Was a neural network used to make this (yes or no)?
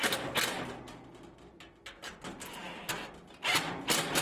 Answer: no